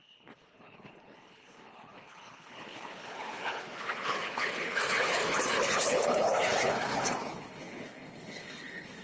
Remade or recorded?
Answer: remade